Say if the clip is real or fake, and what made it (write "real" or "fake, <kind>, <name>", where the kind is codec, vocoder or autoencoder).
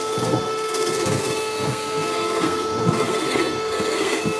fake, codec, SNAC